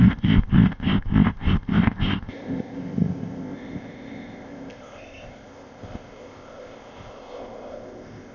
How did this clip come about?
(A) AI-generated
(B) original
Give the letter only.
A